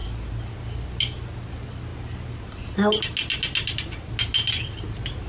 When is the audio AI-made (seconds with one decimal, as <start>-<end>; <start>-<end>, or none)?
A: none